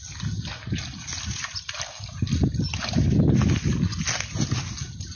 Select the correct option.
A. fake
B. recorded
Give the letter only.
B